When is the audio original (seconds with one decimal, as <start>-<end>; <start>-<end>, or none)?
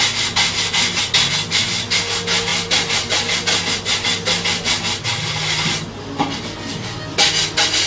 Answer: 0.0-7.9